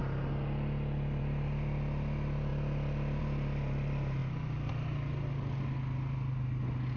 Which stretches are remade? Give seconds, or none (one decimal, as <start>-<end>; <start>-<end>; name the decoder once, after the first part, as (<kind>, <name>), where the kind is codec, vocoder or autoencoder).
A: none